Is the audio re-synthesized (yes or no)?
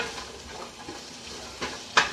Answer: no